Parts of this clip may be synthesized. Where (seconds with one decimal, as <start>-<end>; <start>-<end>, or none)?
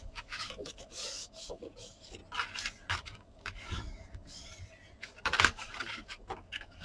0.0-2.2; 2.9-4.5; 5.0-6.8